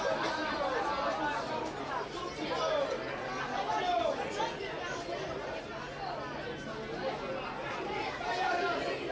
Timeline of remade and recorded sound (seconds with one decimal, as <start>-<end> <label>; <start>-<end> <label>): 0.0-9.1 recorded

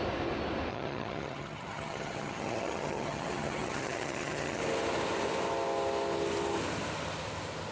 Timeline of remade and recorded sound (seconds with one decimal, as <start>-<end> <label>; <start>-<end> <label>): 0.0-0.7 recorded; 0.7-4.6 remade; 4.6-7.7 recorded

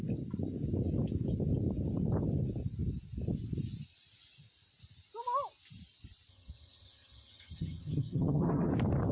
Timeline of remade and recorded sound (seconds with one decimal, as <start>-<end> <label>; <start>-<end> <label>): 0.0-6.3 recorded; 6.3-8.7 remade; 8.7-9.1 recorded

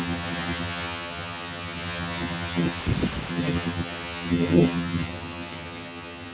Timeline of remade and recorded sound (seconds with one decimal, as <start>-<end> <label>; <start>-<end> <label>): 0.0-2.8 remade; 2.8-3.3 recorded; 3.3-6.3 remade

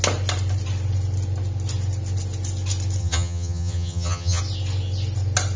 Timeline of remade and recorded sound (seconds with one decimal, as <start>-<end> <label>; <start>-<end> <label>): 0.0-3.0 recorded; 3.0-4.4 remade; 4.4-5.6 recorded

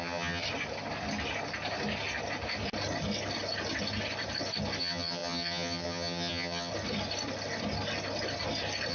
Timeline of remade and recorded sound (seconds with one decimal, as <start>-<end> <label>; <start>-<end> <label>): 0.0-0.4 remade; 0.4-4.8 recorded; 4.8-6.7 remade; 6.7-8.9 recorded

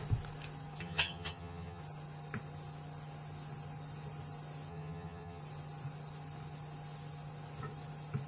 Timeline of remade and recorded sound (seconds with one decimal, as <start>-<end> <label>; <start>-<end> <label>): 0.0-0.8 recorded; 0.8-1.8 remade; 1.8-4.7 recorded; 4.7-5.4 remade; 5.4-8.3 recorded

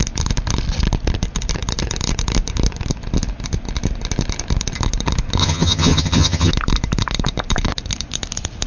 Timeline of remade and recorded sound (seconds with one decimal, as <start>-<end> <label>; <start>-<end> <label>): 0.0-5.4 recorded; 5.4-6.5 remade; 6.5-8.7 recorded